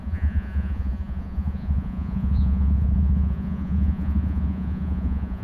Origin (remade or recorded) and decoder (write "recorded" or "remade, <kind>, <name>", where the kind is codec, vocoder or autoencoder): remade, vocoder, Vocos